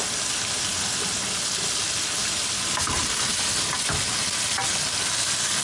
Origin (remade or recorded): recorded